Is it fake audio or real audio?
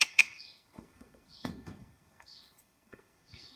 fake